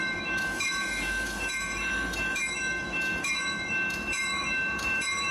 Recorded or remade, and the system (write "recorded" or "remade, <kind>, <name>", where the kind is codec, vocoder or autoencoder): remade, autoencoder, DAC-VAE